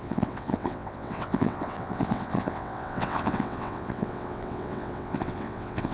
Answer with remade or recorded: remade